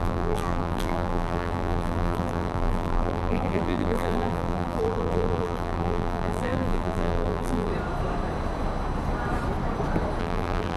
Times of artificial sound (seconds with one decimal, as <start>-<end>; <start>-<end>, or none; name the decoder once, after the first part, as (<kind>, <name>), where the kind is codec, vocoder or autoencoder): 0.0-7.7 (vocoder, BigVGAN v2); 10.2-10.8